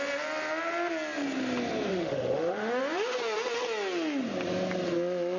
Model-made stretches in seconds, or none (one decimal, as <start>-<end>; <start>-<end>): 1.9-2.8

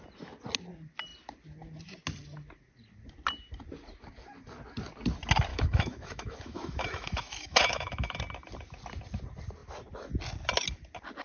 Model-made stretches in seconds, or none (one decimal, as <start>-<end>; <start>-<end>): 5.5-8.2

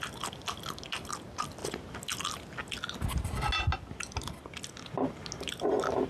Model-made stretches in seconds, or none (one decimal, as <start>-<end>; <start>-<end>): none